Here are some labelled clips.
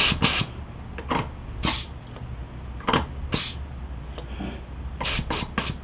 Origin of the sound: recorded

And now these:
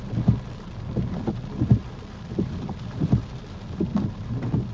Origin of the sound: recorded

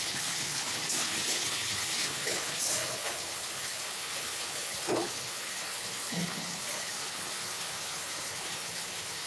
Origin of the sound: remade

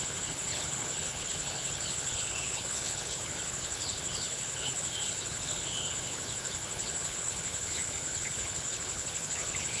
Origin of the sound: remade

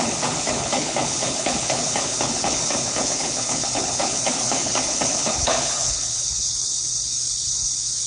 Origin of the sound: remade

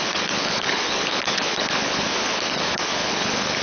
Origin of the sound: remade